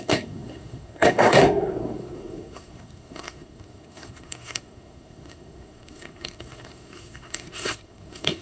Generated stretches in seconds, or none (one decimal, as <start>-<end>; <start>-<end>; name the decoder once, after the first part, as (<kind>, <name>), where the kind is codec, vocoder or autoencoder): 0.0-8.4 (codec, SNAC)